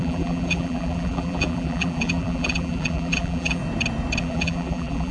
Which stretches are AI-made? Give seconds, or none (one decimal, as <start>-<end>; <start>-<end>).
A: 0.0-3.6; 4.2-5.1